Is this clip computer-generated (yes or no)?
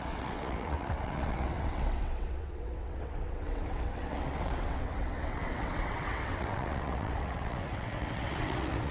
yes